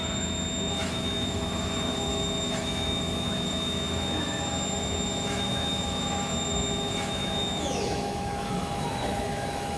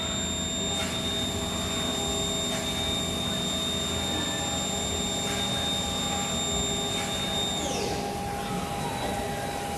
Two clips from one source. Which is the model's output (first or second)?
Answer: first